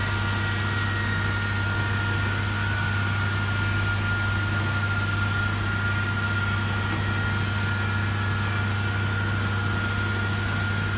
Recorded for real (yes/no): yes